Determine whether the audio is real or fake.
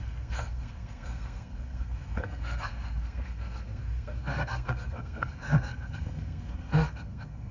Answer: fake